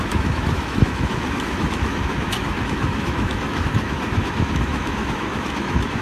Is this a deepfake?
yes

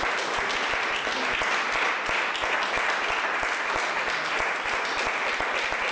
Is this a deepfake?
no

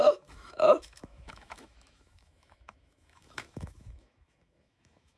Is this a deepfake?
yes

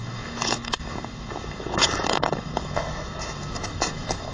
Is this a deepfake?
yes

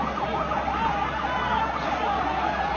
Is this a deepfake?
no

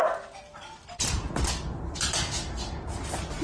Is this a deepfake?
no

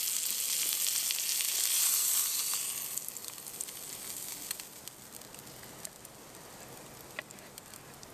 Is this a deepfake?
no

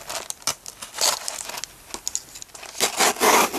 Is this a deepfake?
no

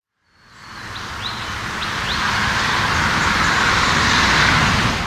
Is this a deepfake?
no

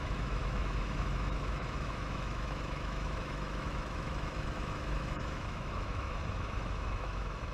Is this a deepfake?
yes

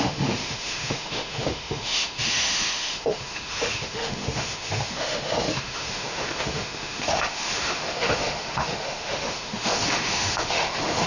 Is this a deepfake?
yes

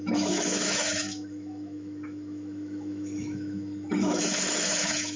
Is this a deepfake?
yes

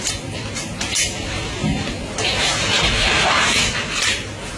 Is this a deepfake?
no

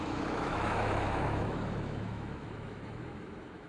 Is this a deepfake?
yes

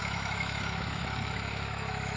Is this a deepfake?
yes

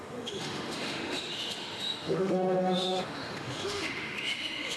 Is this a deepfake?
yes